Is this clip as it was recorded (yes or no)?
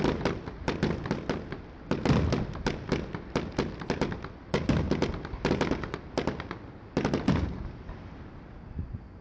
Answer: yes